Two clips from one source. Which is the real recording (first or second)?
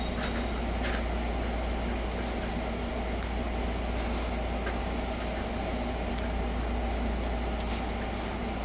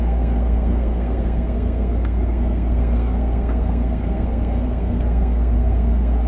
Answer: first